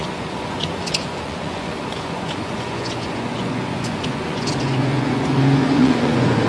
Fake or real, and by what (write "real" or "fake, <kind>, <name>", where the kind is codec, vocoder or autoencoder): fake, vocoder, Vocos